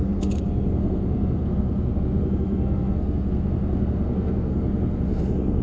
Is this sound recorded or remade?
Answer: remade